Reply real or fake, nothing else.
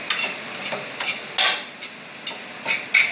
real